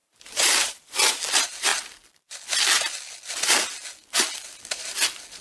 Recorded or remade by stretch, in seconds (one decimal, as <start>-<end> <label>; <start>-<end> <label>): 0.0-1.1 remade; 1.1-5.4 recorded